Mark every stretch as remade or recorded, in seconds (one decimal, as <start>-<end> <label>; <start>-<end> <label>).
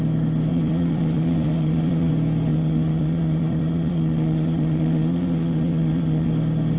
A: 0.0-0.5 recorded; 0.5-2.1 remade; 2.1-2.5 recorded; 2.5-6.3 remade; 6.3-6.8 recorded